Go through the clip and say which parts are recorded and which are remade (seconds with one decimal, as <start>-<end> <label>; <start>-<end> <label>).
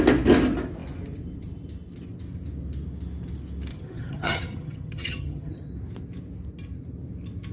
0.0-3.7 recorded; 3.7-5.7 remade; 5.7-7.5 recorded